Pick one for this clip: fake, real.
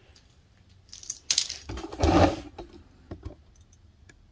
real